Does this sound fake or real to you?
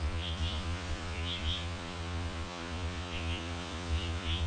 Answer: fake